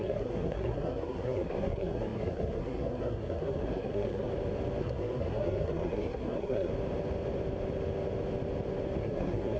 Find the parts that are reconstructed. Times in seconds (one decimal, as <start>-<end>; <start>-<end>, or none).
0.0-4.3; 4.8-6.7; 9.0-9.6